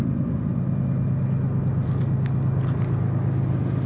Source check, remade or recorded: recorded